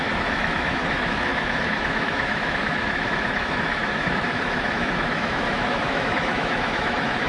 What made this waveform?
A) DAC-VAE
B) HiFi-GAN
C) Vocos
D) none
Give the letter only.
A